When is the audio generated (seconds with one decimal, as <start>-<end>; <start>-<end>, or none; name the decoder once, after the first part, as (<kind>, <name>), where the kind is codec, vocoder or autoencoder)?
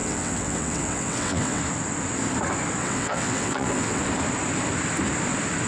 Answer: 0.0-1.6 (vocoder, WaveNeXt); 2.8-4.0